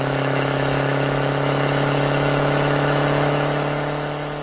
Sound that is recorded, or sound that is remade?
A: remade